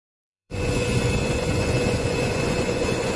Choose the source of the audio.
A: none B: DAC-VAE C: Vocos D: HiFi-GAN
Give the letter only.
C